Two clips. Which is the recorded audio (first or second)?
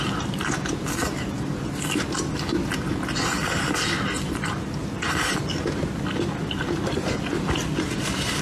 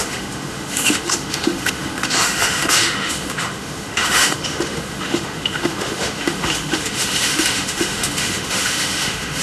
first